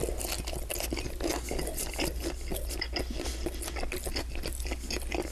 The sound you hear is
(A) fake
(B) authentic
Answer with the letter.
B